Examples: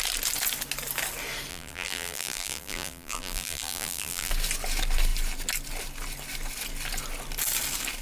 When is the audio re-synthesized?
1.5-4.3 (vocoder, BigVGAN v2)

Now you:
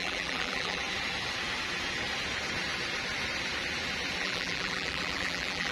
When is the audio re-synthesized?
0.0-0.8 (vocoder, BigVGAN v2); 4.2-5.7

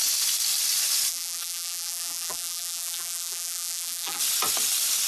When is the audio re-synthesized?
1.1-4.2 (vocoder, BigVGAN v2)